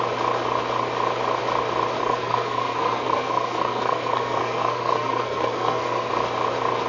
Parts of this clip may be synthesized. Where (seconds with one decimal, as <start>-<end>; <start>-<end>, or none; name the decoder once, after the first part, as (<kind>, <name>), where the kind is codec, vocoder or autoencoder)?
2.0-6.1 (codec, SNAC)

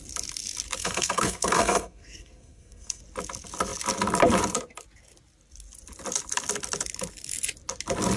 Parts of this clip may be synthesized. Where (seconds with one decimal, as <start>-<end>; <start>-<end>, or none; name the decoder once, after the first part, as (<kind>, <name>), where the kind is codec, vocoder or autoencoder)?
0.8-3.0 (codec, SNAC)

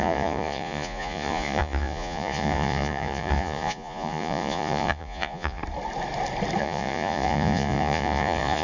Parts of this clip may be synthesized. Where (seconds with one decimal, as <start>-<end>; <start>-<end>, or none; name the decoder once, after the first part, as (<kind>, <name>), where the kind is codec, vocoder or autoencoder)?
0.0-5.6 (vocoder, Vocos); 6.6-8.6

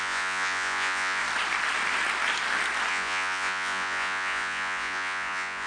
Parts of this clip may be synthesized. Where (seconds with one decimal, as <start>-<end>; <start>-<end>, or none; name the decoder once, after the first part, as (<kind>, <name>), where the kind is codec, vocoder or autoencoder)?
0.0-1.2 (vocoder, Vocos); 2.9-5.7

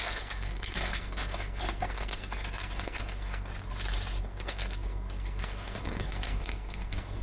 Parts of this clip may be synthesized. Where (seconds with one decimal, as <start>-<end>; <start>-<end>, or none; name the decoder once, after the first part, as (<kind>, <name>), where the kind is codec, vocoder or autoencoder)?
0.0-3.5 (codec, SNAC); 4.2-7.2